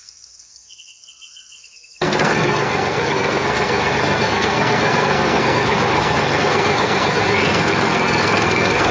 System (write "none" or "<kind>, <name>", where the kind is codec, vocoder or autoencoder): codec, SNAC